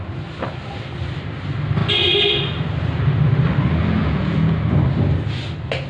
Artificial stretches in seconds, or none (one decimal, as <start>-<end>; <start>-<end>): 4.0-4.6